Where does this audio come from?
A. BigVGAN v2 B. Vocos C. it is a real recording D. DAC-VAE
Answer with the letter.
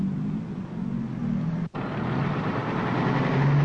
C